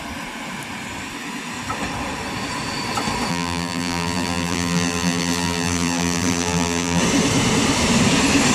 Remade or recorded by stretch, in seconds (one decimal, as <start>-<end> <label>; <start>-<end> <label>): 0.0-3.3 recorded; 3.3-7.0 remade; 7.0-8.5 recorded